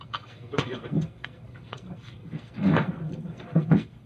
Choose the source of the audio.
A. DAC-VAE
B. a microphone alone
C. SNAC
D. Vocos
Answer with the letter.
C